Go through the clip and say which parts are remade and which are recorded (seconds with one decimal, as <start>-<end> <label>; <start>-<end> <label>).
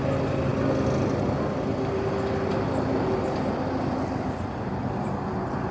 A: 0.0-5.7 recorded